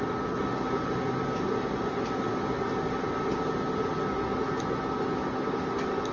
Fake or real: real